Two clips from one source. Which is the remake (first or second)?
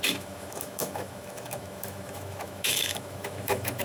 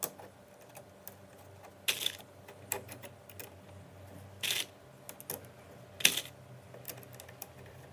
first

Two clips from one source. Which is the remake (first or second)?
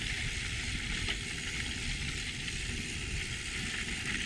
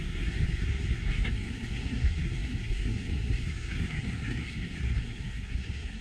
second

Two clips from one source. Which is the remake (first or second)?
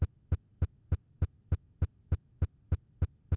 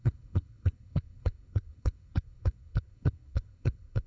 second